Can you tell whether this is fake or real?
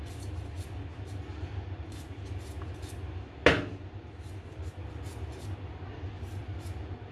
real